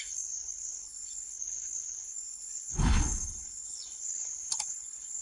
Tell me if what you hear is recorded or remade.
remade